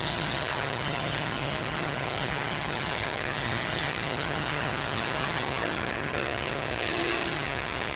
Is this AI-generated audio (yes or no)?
yes